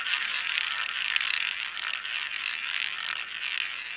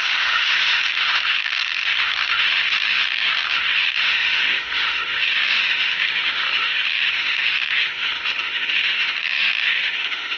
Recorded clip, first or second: first